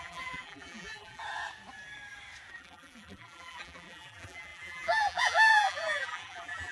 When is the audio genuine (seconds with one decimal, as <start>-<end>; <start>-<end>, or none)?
1.2-2.5